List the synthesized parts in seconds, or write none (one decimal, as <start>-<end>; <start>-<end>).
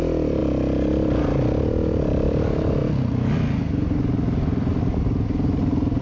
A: none